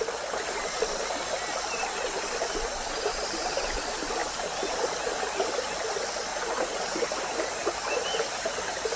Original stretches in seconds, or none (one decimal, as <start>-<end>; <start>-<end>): 0.0-6.3; 7.0-9.0